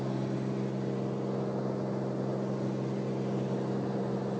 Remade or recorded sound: recorded